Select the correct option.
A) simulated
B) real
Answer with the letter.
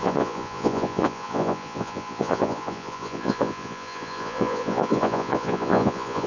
A